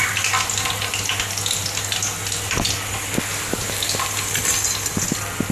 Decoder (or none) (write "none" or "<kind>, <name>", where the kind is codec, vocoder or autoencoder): none